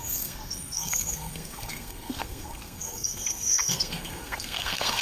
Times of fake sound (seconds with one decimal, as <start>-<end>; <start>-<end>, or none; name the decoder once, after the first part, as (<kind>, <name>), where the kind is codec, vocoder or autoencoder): 0.0-5.0 (codec, SNAC)